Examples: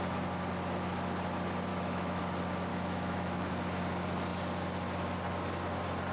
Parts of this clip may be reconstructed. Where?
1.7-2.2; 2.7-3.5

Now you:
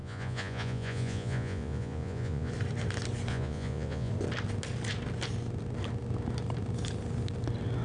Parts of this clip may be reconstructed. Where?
0.0-2.5; 3.3-4.1

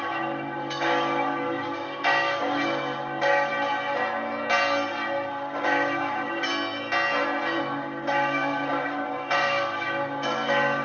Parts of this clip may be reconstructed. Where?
0.0-3.5; 5.3-6.5; 7.6-10.8

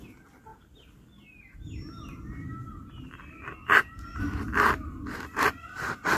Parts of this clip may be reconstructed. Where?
none

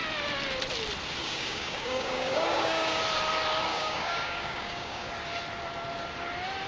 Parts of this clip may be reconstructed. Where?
1.2-3.0; 3.7-5.1

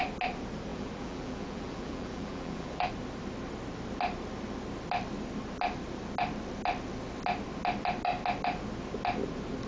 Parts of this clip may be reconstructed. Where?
0.7-2.9